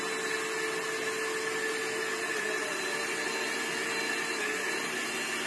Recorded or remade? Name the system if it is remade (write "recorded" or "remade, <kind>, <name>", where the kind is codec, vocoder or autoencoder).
recorded